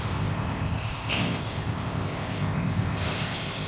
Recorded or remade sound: remade